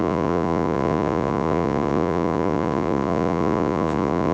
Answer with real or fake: fake